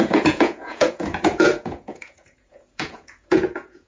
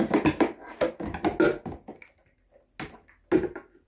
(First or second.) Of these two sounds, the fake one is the first